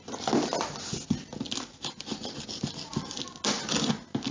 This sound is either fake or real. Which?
real